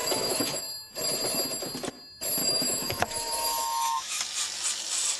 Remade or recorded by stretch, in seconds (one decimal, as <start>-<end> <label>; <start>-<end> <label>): 0.0-0.6 remade; 0.6-2.4 recorded; 2.4-4.2 remade; 4.2-5.2 recorded